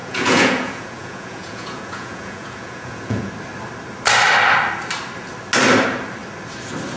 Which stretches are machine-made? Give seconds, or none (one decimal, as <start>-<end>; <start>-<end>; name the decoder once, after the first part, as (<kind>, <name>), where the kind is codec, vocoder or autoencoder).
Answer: 0.0-3.3 (vocoder, Vocos)